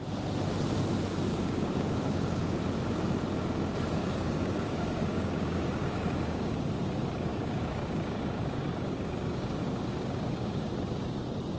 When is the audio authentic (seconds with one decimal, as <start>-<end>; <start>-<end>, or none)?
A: 0.0-1.3; 2.6-4.0; 6.6-7.3; 10.7-11.6